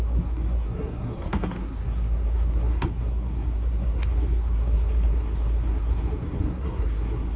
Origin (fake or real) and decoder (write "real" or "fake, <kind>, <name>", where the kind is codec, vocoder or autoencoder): fake, codec, SNAC